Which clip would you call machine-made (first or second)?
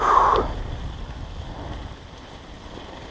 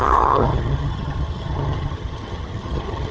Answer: second